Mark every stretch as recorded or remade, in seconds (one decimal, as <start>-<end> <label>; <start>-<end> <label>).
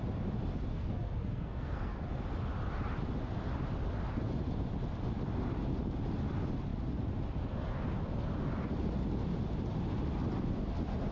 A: 0.0-0.7 recorded; 0.7-2.1 remade; 2.1-11.1 recorded